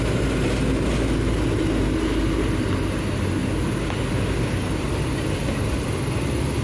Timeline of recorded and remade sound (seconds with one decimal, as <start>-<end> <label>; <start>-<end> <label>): 0.0-6.6 recorded